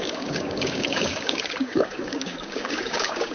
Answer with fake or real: fake